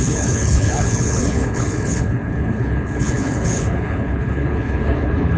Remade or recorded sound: remade